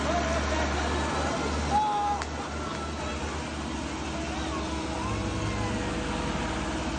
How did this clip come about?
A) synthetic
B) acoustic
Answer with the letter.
B